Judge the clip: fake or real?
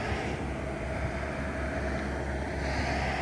real